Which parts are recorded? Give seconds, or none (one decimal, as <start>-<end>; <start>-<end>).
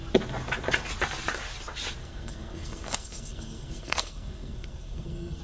0.0-2.0